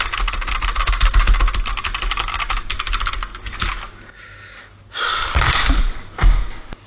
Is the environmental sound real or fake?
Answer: real